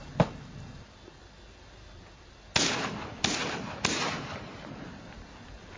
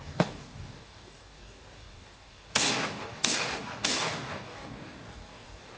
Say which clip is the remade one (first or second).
second